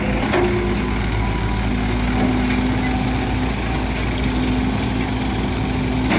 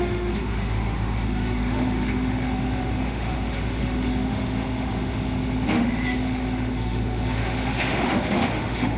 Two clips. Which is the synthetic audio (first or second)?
second